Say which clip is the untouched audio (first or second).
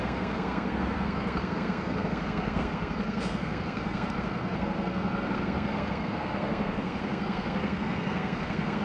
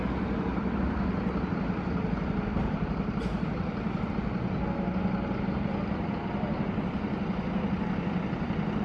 second